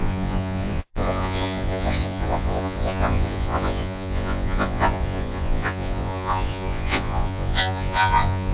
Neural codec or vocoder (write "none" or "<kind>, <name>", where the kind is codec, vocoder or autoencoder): vocoder, Vocos